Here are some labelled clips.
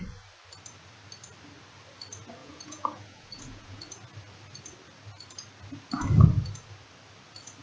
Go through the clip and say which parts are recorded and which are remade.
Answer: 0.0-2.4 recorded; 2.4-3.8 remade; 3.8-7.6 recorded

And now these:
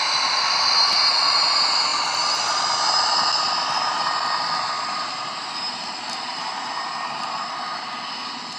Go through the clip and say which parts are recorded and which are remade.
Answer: 0.0-8.6 recorded